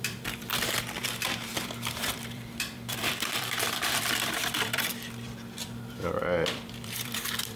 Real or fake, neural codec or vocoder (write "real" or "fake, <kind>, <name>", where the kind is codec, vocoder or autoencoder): fake, vocoder, BigVGAN v2